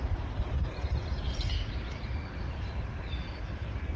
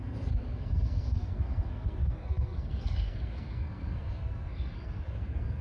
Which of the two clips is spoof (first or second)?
second